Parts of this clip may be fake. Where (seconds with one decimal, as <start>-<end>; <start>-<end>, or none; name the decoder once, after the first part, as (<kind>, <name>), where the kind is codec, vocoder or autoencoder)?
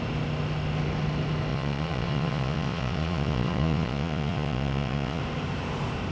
1.5-5.2 (vocoder, Vocos)